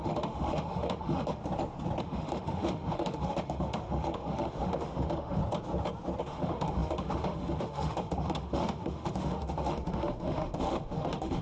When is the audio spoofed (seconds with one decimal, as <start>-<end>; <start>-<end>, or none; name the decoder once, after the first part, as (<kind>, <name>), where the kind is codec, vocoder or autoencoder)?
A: 0.0-1.4 (autoencoder, DAC-VAE); 2.0-5.4; 6.2-11.4